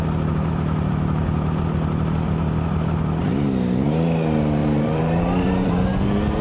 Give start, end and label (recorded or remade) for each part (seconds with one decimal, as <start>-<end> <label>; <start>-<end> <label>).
0.0-4.6 recorded; 4.6-5.7 remade; 5.7-6.4 recorded